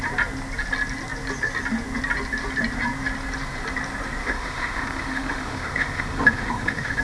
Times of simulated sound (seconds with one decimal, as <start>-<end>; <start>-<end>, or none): 4.2-7.0